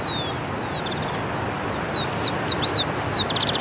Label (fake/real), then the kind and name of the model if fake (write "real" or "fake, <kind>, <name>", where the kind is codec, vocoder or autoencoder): real